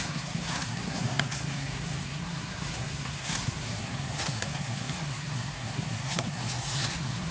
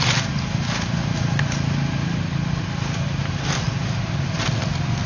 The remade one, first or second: first